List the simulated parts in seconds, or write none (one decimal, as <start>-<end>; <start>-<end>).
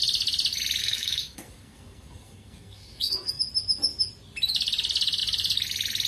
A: 0.8-3.4